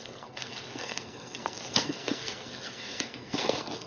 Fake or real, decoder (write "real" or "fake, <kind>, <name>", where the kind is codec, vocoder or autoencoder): fake, codec, SNAC